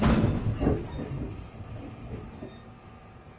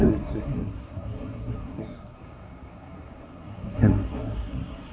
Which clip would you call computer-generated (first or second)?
second